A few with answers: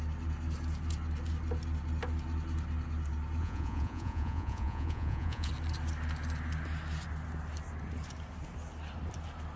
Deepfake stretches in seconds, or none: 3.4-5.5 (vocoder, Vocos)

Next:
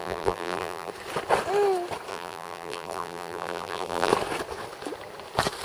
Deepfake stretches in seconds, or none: 0.0-0.9 (vocoder, BigVGAN v2); 2.1-4.1

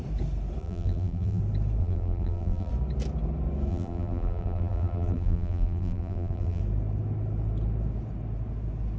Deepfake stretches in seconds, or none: 0.6-1.4 (vocoder, BigVGAN v2); 1.8-2.7; 3.7-6.6